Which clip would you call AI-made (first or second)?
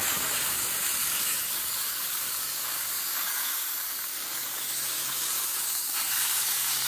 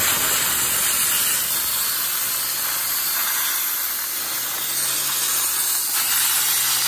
first